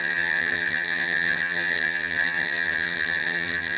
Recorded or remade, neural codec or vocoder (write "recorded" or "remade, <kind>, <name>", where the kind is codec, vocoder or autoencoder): remade, vocoder, HiFi-GAN